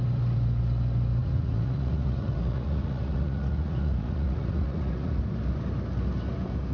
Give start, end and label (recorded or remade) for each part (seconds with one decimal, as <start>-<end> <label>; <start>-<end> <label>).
0.0-1.2 recorded; 1.2-5.2 remade; 5.2-6.7 recorded